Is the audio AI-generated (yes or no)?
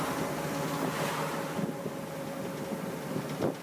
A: no